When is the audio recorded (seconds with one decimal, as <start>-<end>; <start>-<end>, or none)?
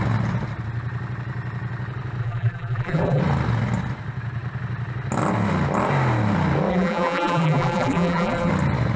0.0-2.2; 3.2-6.7; 8.5-9.0